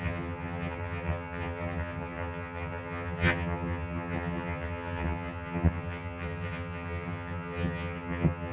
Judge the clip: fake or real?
fake